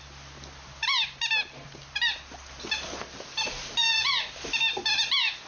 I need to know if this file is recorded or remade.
recorded